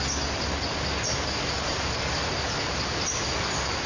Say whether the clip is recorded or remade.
recorded